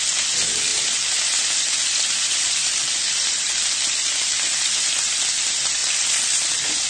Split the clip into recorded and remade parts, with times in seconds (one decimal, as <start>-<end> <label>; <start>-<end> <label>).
0.0-1.9 recorded; 1.9-3.5 remade; 3.5-5.8 recorded; 5.8-6.5 remade; 6.5-6.9 recorded